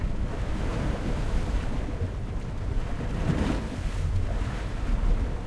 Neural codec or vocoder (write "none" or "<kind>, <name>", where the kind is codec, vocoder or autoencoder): none